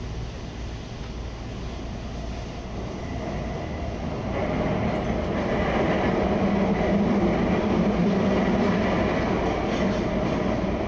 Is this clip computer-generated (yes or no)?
no